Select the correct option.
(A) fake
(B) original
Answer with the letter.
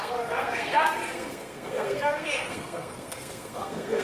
A